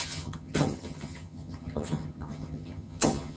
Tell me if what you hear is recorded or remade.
remade